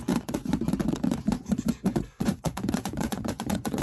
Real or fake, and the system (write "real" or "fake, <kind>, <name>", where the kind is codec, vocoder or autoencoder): fake, vocoder, Vocos